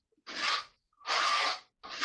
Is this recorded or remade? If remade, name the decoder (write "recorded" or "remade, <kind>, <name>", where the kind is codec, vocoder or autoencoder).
recorded